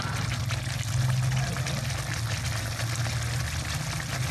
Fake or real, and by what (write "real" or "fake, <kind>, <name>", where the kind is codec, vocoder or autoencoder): real